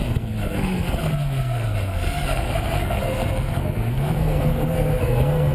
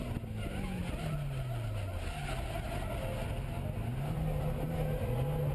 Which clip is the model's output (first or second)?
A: first